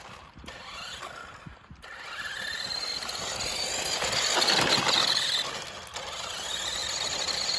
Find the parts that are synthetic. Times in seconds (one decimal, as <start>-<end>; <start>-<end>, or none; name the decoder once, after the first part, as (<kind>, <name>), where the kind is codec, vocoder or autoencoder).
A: 6.8-7.6 (vocoder, BigVGAN v2)